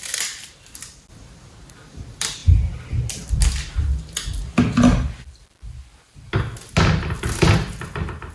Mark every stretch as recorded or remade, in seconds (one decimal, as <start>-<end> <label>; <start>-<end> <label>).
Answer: 0.0-8.3 recorded